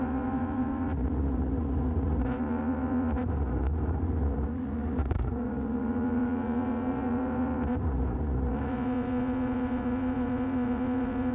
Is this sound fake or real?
fake